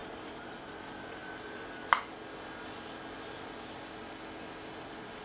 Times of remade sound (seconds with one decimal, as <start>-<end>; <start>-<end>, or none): 0.0-0.6

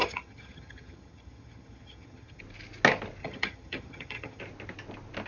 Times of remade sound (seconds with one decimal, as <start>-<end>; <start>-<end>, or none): 0.0-2.4; 3.2-4.4

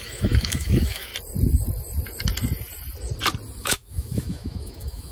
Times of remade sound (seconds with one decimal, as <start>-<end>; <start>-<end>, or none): 0.0-1.1; 3.6-5.1

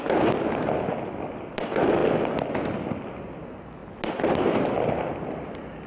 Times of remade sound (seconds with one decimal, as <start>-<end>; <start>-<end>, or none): none

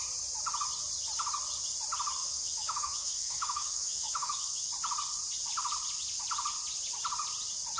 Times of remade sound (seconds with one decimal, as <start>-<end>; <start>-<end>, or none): 2.2-4.7

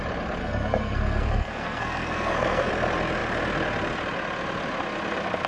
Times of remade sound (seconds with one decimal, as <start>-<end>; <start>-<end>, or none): 0.4-2.7